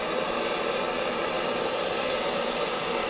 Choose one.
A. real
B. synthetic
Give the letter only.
A